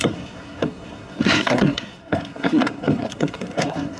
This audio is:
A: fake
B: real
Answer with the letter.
A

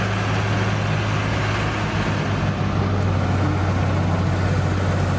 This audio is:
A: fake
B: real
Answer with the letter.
B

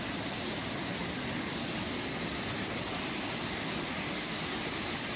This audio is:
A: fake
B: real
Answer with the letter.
B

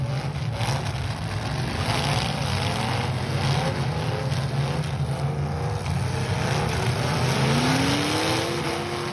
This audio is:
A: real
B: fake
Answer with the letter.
A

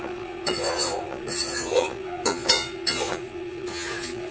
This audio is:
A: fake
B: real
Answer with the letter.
A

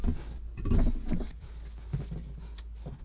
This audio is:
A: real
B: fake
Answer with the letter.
A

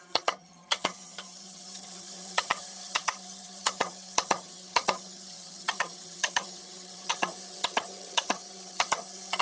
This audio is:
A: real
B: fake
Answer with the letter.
B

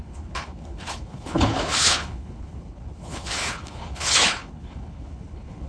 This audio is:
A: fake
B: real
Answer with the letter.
A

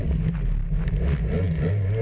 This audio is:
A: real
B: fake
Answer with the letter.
A